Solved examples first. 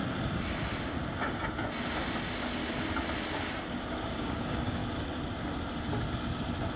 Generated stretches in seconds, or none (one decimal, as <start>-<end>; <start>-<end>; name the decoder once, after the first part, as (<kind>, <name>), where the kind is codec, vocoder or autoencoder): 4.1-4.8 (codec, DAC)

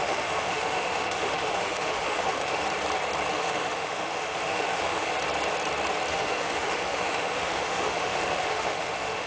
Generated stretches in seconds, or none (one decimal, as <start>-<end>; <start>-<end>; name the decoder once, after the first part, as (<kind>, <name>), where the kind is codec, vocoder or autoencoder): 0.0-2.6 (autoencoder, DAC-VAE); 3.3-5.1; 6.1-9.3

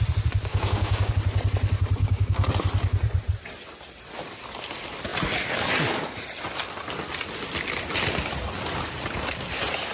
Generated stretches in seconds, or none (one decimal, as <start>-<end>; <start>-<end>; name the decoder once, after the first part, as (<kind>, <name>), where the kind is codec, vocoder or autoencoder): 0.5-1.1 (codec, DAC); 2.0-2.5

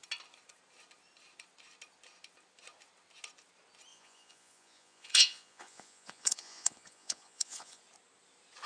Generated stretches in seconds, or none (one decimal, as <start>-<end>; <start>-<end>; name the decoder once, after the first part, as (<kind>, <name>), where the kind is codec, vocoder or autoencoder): 3.9-7.8 (vocoder, Vocos)

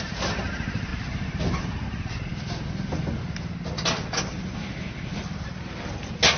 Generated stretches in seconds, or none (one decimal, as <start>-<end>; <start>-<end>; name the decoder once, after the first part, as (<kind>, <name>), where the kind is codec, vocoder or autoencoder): 0.0-0.9 (vocoder, BigVGAN v2); 1.6-2.3; 4.3-5.1

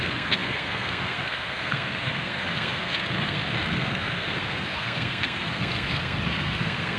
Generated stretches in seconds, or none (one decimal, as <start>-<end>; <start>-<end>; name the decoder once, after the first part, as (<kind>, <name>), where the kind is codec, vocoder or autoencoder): 0.0-7.0 (codec, SNAC)

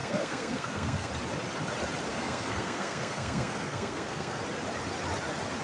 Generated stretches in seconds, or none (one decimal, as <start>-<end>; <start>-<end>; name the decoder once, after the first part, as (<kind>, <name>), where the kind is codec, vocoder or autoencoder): 0.0-1.1 (codec, SNAC); 2.1-4.4